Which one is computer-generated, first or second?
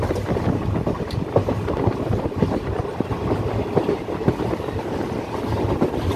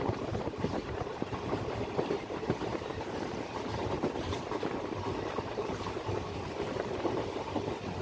second